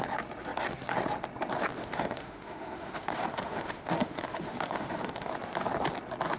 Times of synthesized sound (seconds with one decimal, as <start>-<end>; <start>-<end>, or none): 1.8-5.3